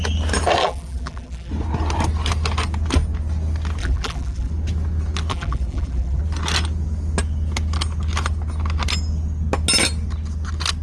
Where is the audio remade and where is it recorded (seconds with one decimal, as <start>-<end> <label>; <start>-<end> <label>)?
0.0-0.6 recorded; 0.6-1.5 remade; 1.5-3.8 recorded; 3.8-4.5 remade; 4.5-5.3 recorded; 5.3-6.2 remade; 6.2-10.8 recorded